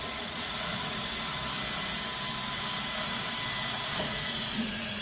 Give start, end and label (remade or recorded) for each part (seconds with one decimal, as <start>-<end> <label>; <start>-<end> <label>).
0.0-1.0 remade; 1.0-4.0 recorded; 4.0-5.0 remade